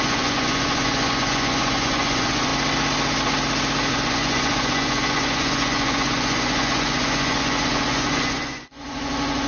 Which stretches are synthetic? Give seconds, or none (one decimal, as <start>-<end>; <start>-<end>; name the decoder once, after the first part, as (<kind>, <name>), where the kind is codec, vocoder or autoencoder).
0.0-2.5 (vocoder, Vocos); 3.9-9.5